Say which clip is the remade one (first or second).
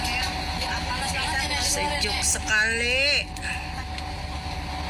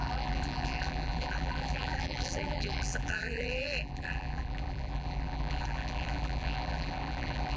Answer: second